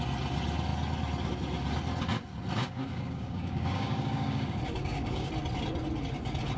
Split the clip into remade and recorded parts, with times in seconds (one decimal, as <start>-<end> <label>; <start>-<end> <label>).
0.0-2.6 recorded; 2.6-5.3 remade; 5.3-6.6 recorded